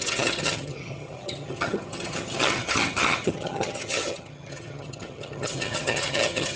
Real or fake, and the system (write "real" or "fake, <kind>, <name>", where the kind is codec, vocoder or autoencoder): fake, vocoder, HiFi-GAN